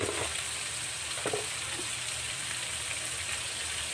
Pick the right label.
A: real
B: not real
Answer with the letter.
B